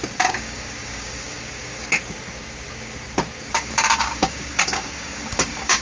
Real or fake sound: fake